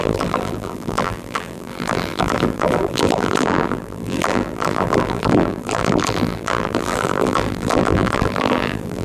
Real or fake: fake